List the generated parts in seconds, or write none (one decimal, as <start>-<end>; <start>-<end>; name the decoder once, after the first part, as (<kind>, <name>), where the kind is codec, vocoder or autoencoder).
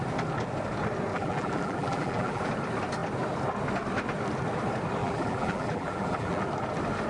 1.1-2.5 (vocoder, BigVGAN v2); 5.0-6.4